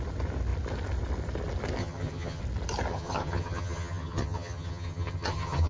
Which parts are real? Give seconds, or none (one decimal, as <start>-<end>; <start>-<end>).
0.0-1.8; 2.4-2.9